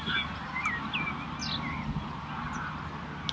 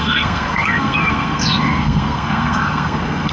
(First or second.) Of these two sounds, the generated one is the second